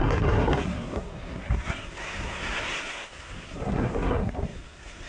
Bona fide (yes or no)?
no